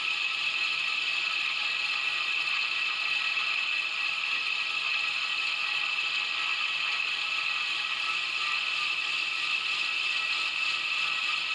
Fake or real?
real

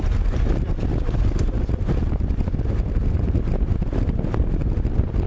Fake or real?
real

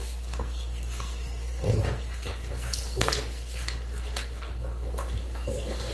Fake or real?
fake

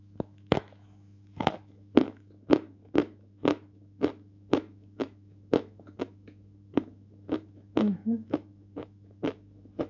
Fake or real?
fake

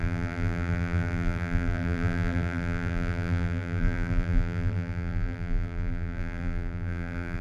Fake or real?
fake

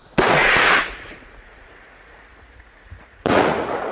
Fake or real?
fake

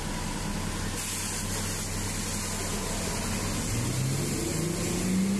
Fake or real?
real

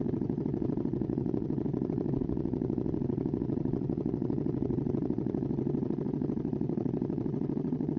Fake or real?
fake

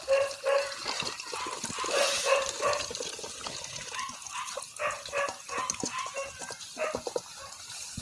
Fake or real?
real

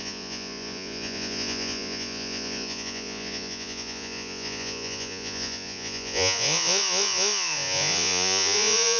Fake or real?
fake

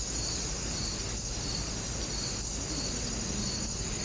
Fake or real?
real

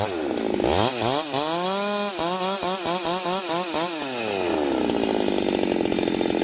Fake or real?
real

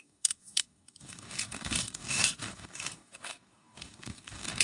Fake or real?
fake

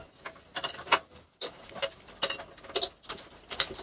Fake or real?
real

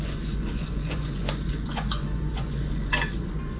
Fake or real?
fake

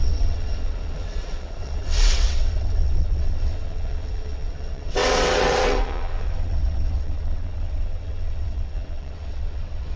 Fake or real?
fake